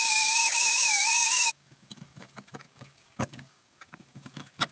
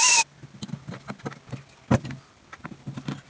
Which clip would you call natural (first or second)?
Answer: second